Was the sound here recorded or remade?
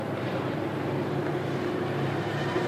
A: remade